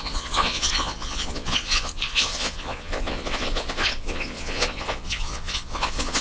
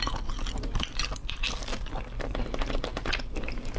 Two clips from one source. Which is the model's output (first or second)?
first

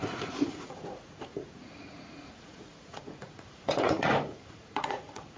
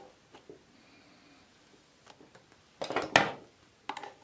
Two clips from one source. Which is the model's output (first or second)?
first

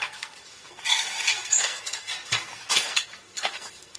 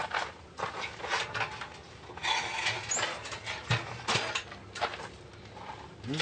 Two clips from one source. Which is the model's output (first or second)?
first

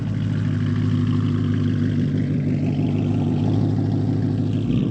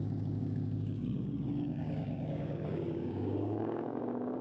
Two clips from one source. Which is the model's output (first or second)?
second